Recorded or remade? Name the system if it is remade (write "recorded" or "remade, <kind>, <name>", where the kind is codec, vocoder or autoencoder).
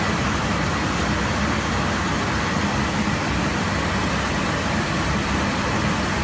recorded